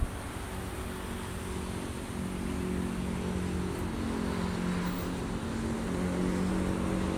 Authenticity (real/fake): real